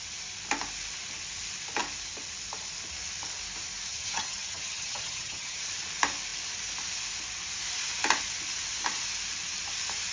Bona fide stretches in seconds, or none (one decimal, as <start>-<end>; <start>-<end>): 0.0-3.9; 5.6-10.1